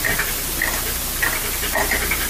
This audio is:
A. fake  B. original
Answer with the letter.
B